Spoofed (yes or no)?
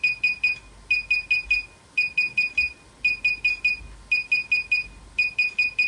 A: no